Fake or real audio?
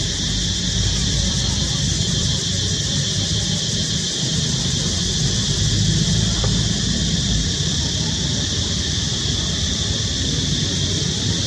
fake